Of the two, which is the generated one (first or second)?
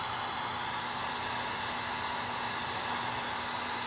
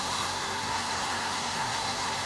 second